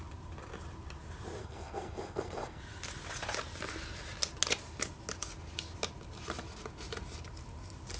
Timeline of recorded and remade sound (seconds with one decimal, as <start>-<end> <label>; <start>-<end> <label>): 0.0-1.4 recorded; 1.4-2.6 remade; 2.6-8.0 recorded